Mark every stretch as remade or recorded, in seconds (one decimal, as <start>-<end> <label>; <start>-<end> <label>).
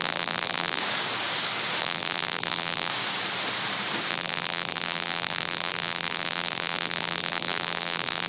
0.0-0.8 remade; 0.8-1.8 recorded; 1.8-2.9 remade; 2.9-4.1 recorded; 4.1-8.3 remade